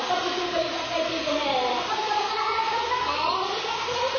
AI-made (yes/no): no